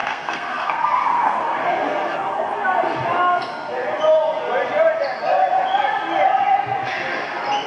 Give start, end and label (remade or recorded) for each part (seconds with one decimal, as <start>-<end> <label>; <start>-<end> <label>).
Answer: 0.0-1.6 remade; 1.6-7.7 recorded